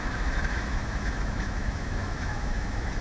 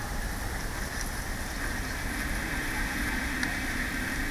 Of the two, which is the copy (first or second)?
first